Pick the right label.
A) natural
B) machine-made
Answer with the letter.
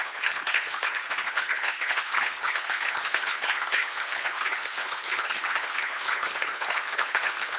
B